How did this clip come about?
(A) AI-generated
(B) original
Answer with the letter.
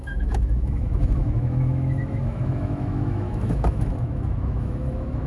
A